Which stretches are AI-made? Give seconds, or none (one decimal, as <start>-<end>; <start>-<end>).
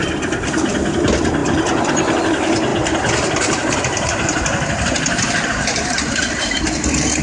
none